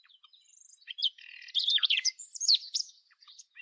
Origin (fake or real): fake